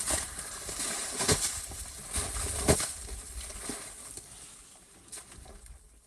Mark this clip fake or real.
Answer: real